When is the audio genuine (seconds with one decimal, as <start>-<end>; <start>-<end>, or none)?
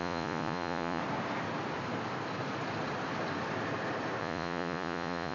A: 1.0-4.2